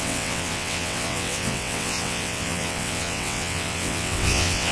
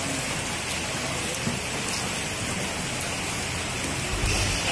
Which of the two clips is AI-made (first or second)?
first